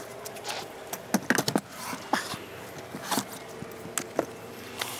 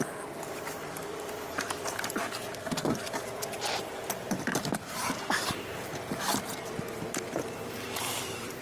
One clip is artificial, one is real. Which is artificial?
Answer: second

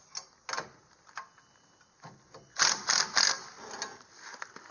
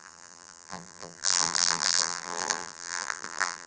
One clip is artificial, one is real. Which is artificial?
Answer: second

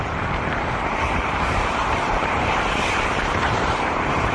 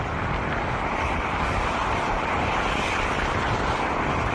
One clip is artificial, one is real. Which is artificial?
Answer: first